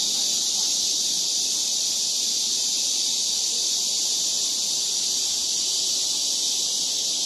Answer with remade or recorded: recorded